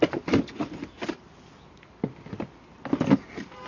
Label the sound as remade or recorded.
recorded